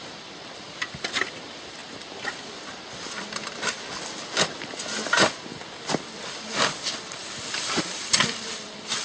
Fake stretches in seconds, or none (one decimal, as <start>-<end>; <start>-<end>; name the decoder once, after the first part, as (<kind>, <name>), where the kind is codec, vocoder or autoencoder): none